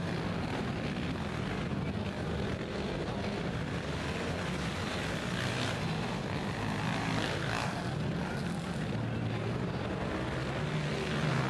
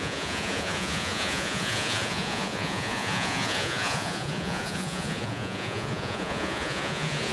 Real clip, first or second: first